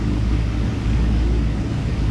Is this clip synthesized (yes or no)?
yes